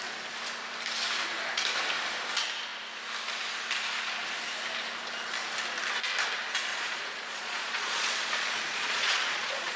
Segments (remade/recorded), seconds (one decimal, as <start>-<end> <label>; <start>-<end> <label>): 0.0-6.7 recorded; 6.7-9.8 remade